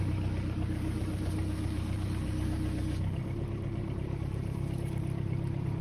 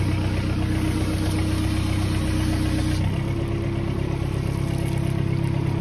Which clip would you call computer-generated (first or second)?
first